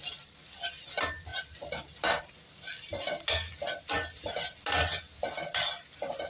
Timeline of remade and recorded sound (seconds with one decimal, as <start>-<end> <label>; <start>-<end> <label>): 0.0-6.3 recorded